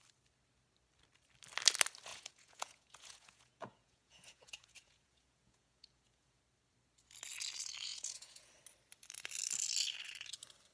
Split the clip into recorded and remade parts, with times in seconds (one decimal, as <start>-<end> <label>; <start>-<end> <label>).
0.0-2.1 recorded; 2.1-6.4 remade; 6.4-7.9 recorded; 7.9-8.5 remade; 8.5-10.7 recorded